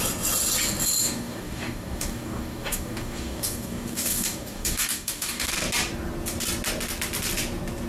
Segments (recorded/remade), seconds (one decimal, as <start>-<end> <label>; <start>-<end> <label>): 0.0-1.0 recorded; 1.0-5.5 remade; 5.5-7.9 recorded